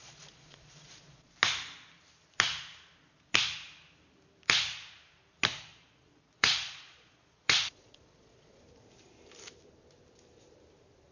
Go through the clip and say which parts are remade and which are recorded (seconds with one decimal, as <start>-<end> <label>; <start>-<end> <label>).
0.0-1.3 remade; 1.3-5.7 recorded; 5.7-8.6 remade; 8.6-11.1 recorded